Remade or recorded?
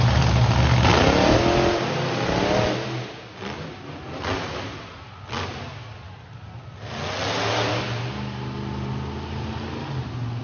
recorded